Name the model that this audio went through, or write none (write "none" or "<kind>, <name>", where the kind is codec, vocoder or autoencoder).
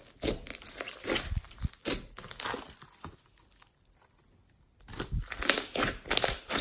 none